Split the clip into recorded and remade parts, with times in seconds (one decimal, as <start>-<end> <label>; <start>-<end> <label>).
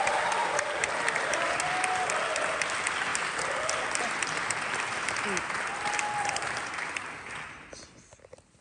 0.0-0.4 recorded; 0.4-1.7 remade; 1.7-8.6 recorded